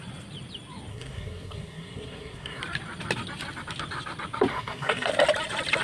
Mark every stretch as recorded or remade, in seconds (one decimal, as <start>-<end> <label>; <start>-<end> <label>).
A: 0.0-0.9 recorded; 0.9-2.6 remade; 2.6-4.5 recorded; 4.5-5.1 remade; 5.1-5.8 recorded